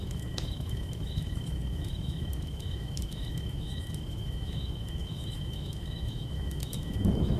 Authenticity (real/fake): fake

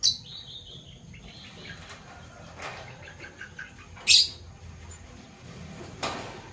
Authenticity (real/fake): real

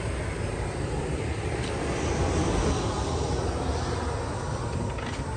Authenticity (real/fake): real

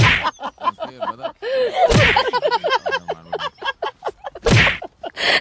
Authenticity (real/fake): real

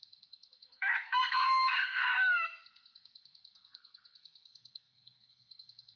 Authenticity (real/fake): fake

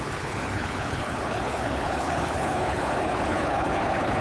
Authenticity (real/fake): fake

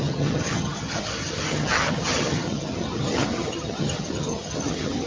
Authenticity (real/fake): fake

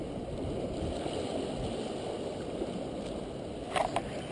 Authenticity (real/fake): real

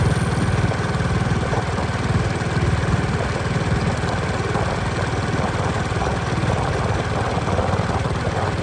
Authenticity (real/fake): real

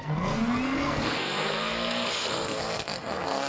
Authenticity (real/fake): fake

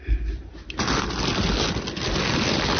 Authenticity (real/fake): real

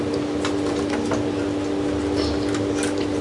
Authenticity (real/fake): real